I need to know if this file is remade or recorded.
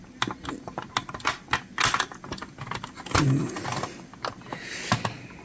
recorded